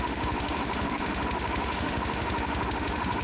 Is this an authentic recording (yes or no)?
no